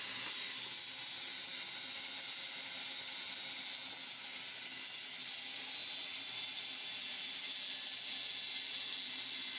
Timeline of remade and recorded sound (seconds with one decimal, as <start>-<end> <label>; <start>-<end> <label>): 0.0-9.6 recorded